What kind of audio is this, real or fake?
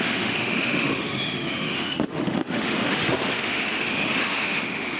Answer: fake